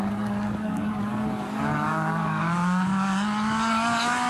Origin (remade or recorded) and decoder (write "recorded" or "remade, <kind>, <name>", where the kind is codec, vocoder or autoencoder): remade, codec, DAC